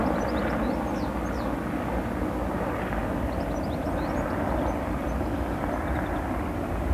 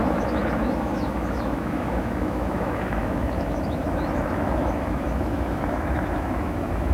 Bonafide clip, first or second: first